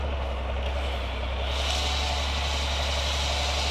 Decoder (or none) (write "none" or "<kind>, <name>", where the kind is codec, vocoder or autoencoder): none